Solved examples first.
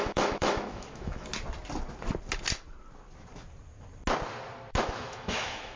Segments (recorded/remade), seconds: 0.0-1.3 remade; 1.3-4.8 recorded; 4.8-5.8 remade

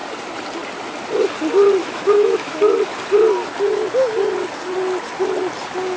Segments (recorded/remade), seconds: 0.0-1.8 recorded; 1.8-2.7 remade; 2.7-6.0 recorded

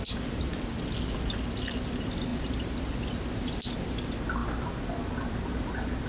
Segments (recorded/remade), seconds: 0.0-6.1 recorded

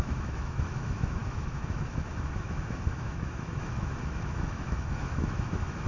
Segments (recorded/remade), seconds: 0.0-5.9 remade

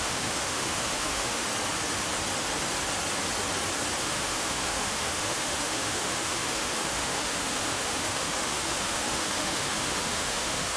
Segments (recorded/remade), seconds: 0.0-1.5 remade; 1.5-4.0 recorded; 4.0-10.8 remade

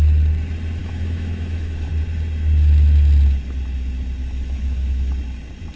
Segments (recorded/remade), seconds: 0.0-0.8 recorded; 0.8-1.9 remade; 1.9-4.2 recorded; 4.2-5.1 remade; 5.1-5.8 recorded

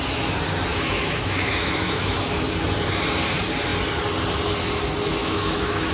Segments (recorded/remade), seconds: 0.0-0.7 recorded; 0.7-2.4 remade; 2.4-5.2 recorded; 5.2-5.9 remade

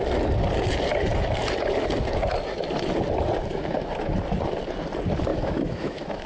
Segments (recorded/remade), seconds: 0.0-5.3 recorded; 5.3-6.3 remade